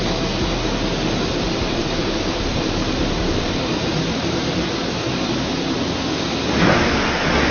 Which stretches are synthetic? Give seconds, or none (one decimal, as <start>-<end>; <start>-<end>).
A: 1.3-5.8